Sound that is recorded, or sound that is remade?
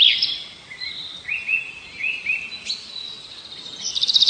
recorded